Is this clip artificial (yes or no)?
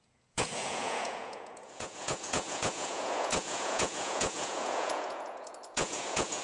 yes